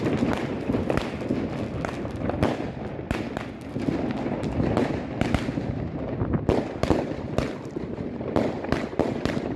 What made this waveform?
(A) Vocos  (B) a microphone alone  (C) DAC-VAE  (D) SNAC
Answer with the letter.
B